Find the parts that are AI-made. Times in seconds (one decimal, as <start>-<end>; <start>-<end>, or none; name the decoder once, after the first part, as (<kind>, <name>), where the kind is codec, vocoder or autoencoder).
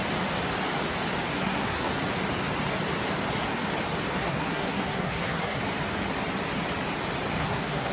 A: 1.3-1.9 (codec, SNAC); 4.2-5.6; 7.4-7.9